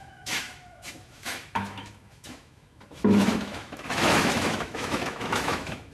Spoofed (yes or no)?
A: yes